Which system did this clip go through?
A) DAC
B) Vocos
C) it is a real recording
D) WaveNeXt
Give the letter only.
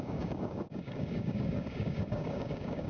A